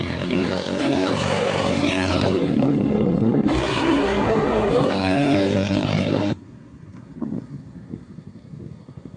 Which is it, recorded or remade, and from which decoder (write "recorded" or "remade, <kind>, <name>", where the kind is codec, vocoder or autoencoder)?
remade, codec, SNAC